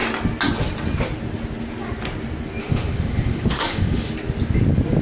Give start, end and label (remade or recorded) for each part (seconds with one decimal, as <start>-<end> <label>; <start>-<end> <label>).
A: 0.0-2.6 recorded; 2.6-4.1 remade; 4.1-5.0 recorded